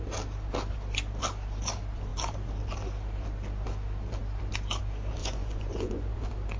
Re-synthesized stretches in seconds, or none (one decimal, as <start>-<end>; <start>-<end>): 5.2-6.1